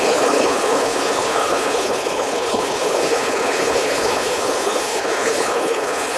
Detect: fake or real fake